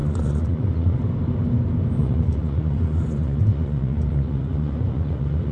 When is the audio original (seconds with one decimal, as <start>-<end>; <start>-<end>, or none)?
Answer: 1.0-2.0